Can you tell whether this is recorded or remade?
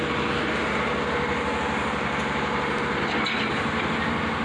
recorded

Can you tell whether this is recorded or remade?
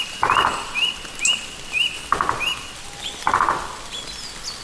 recorded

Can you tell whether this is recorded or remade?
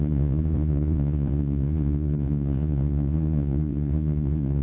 remade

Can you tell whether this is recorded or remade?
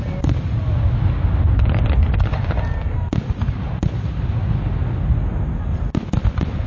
recorded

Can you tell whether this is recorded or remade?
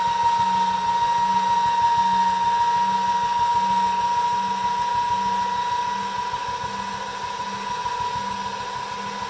recorded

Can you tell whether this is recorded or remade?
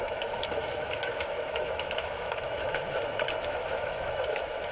remade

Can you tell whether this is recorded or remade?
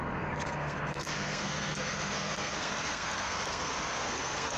remade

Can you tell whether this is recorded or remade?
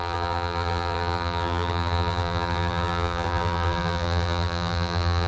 remade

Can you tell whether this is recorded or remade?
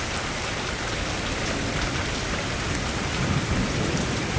recorded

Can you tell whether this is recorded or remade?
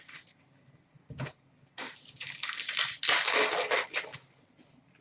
recorded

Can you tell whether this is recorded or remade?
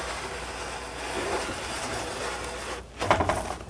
recorded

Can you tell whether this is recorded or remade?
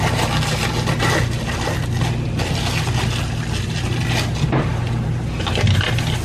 recorded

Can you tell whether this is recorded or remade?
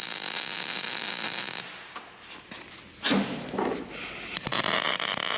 recorded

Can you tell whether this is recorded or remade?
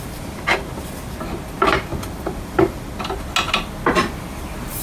recorded